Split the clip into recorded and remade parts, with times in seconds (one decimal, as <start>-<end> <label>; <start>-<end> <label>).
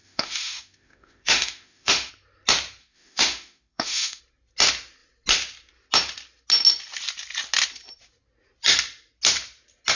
0.0-2.1 remade; 2.1-2.8 recorded; 2.8-4.2 remade; 4.2-9.9 recorded